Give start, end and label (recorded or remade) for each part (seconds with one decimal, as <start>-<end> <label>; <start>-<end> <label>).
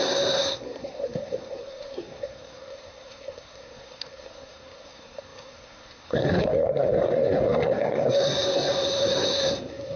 0.0-10.0 remade